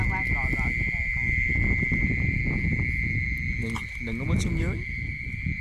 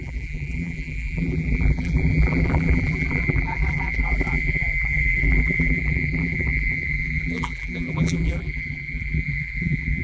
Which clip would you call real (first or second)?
first